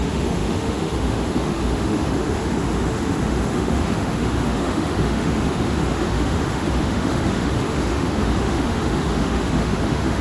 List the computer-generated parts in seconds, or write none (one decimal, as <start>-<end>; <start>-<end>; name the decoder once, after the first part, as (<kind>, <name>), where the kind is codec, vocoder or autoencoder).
0.0-10.2 (autoencoder, DAC-VAE)

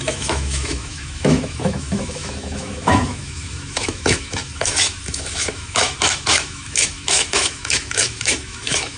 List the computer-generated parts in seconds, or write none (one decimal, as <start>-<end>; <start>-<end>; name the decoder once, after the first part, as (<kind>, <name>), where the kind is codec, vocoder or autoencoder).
0.0-9.0 (autoencoder, DAC-VAE)

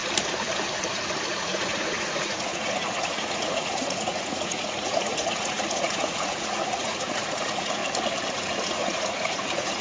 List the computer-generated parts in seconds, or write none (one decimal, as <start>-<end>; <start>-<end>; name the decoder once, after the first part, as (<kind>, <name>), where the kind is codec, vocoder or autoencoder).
1.3-7.8 (vocoder, Vocos); 8.3-9.8